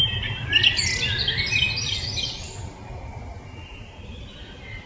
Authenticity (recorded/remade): recorded